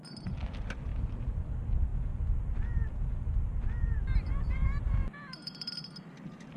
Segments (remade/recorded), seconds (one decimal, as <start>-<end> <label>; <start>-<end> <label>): 0.0-4.3 recorded; 4.3-6.6 remade